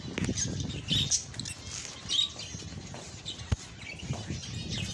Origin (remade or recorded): recorded